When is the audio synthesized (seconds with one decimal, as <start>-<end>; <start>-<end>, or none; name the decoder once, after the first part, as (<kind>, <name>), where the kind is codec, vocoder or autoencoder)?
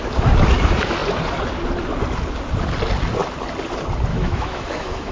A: 4.1-5.1 (autoencoder, DAC-VAE)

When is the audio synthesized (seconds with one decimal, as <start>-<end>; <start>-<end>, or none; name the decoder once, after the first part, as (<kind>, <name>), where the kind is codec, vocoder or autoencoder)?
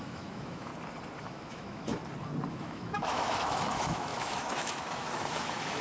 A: 0.0-0.7 (autoencoder, DAC-VAE); 1.2-2.0; 2.5-5.8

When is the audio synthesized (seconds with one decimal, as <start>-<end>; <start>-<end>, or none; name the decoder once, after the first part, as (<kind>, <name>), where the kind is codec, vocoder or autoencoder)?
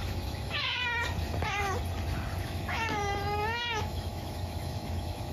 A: 0.0-1.0 (autoencoder, DAC-VAE); 2.4-5.3